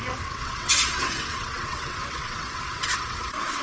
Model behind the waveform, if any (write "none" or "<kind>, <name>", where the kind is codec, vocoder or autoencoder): vocoder, WaveNeXt